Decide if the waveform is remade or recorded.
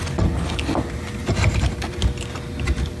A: recorded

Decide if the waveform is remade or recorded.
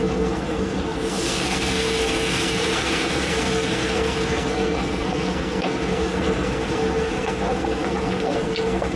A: remade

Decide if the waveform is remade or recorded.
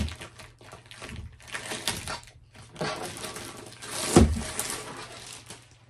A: recorded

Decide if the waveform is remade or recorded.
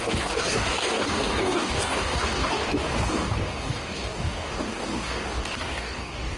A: remade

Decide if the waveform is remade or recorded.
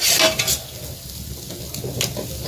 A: recorded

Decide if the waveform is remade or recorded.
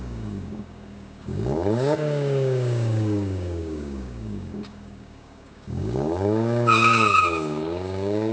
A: remade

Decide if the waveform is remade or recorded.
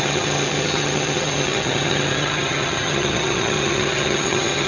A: remade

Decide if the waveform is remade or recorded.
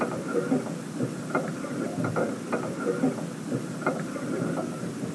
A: recorded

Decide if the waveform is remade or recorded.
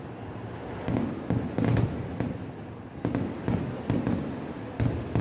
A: recorded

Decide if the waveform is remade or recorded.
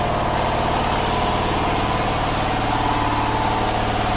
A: recorded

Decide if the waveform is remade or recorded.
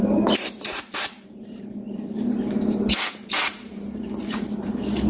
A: remade